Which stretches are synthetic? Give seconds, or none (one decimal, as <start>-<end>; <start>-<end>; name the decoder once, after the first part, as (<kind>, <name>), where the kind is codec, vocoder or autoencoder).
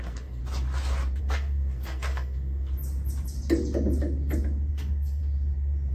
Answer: 0.0-0.4 (codec, SNAC); 1.2-2.7; 4.7-5.2